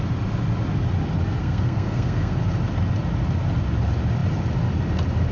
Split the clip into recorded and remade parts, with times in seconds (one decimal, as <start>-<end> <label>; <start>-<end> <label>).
0.0-1.4 recorded; 1.4-2.4 remade; 2.4-5.3 recorded